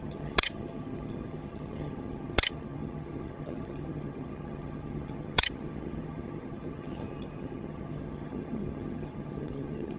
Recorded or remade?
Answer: remade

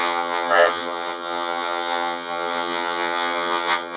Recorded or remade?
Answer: remade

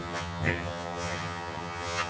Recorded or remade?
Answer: remade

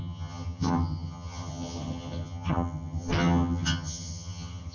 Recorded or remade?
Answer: remade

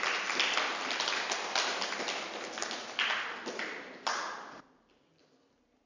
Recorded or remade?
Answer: recorded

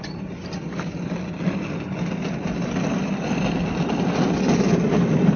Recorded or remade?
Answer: recorded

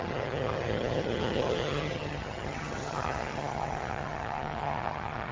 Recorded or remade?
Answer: remade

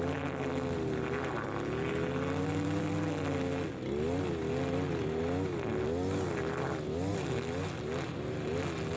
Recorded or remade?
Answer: recorded